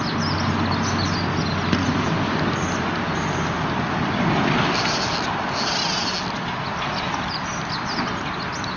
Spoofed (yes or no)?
no